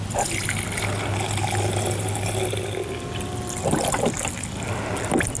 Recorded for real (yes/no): yes